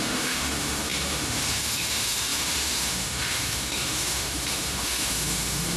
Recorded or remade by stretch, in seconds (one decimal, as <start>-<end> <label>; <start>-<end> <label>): 0.0-5.8 remade